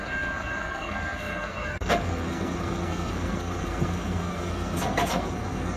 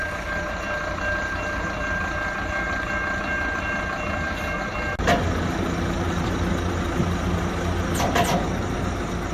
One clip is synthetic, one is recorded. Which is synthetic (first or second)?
first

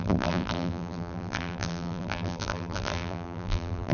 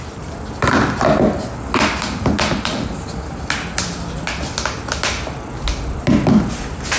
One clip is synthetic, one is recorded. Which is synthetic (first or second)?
first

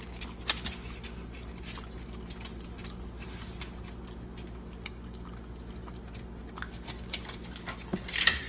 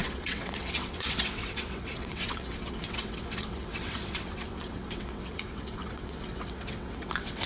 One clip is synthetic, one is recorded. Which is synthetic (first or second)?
second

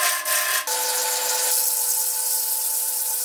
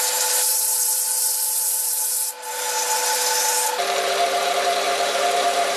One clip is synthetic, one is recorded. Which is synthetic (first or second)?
second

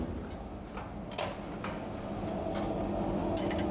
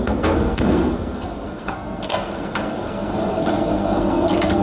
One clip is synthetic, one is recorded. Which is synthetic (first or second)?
second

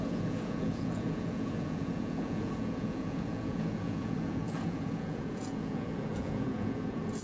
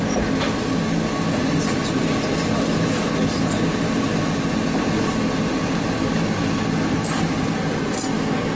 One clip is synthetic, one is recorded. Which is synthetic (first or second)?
first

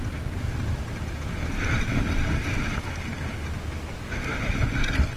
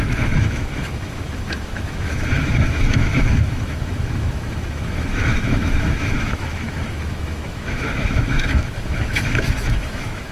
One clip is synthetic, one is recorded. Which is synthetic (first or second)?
second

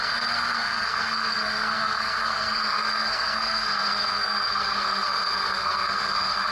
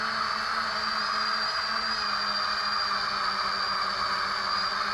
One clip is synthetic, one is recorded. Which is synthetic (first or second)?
first